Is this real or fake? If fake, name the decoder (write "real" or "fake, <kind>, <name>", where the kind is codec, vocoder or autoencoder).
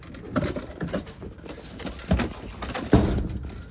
real